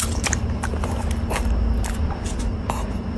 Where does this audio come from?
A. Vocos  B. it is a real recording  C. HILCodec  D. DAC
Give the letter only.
B